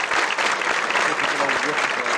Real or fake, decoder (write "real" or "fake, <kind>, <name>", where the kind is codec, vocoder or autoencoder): real